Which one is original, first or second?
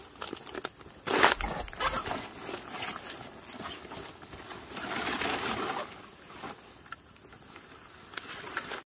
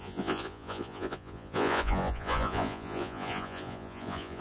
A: first